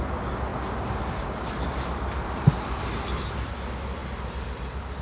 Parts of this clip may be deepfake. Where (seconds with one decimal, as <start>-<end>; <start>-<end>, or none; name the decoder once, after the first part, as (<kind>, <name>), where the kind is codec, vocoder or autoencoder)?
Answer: none